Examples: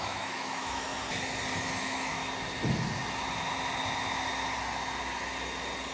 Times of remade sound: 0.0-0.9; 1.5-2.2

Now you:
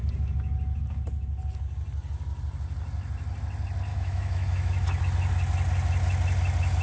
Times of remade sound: 3.9-5.0

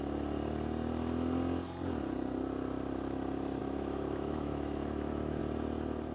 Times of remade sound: 3.6-5.4

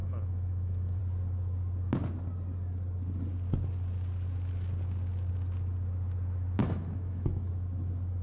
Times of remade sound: 0.0-1.0; 6.6-7.5

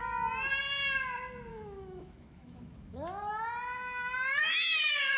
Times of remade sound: 1.5-3.3; 4.3-5.2